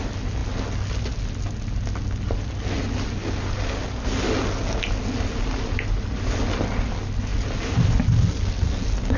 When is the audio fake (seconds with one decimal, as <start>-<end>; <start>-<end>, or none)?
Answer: none

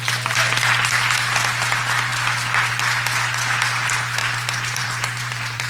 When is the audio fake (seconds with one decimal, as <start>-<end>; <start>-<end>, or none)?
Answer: 4.2-5.7

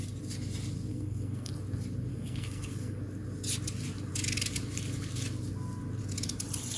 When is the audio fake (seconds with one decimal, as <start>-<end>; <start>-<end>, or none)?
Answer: 0.9-1.5; 2.1-3.0

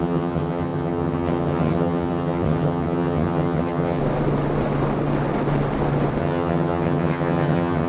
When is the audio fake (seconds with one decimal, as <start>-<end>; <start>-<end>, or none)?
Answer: 0.0-4.0; 6.2-7.9